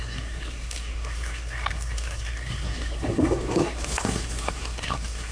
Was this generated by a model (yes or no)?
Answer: yes